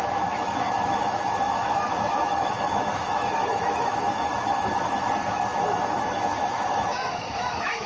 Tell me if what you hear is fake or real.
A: fake